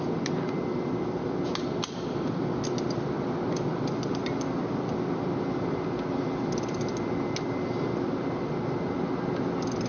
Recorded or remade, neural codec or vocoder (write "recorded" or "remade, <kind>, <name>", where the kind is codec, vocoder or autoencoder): remade, vocoder, BigVGAN v2